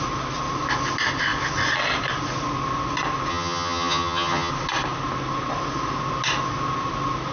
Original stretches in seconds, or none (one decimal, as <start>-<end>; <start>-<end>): 0.0-3.3; 4.5-7.3